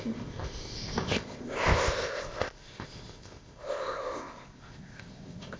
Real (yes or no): no